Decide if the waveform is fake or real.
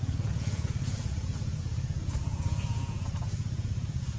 fake